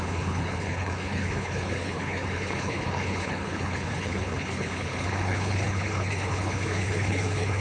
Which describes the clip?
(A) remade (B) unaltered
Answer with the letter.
A